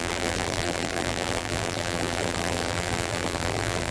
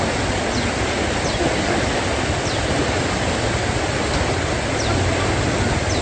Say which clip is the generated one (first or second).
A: first